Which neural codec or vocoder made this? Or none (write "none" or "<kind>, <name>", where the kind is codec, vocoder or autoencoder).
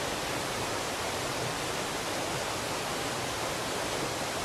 none